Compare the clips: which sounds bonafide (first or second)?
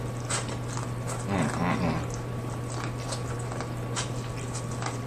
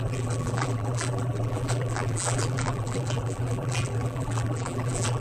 first